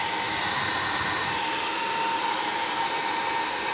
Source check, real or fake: real